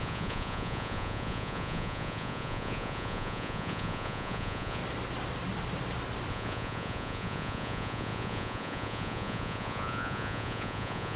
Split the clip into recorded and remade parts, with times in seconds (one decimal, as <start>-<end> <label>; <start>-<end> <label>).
0.0-4.8 remade; 4.8-6.3 recorded; 6.3-11.2 remade